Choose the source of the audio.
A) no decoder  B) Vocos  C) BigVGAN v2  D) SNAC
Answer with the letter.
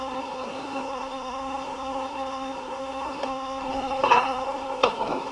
D